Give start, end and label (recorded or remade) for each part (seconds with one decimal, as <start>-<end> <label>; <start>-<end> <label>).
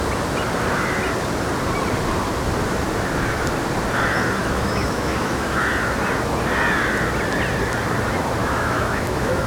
0.0-4.4 recorded; 4.4-5.7 remade; 5.7-8.4 recorded; 8.4-9.5 remade